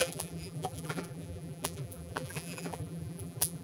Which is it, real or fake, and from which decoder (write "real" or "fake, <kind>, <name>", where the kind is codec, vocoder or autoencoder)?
fake, vocoder, BigVGAN v2